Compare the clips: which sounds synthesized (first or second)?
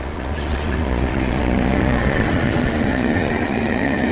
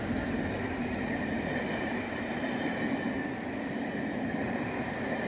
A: first